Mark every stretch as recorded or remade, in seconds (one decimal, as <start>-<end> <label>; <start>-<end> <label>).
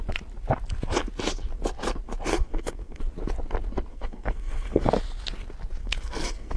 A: 0.0-2.3 recorded; 2.3-3.0 remade; 3.0-3.9 recorded; 3.9-4.9 remade; 4.9-5.8 recorded; 5.8-6.6 remade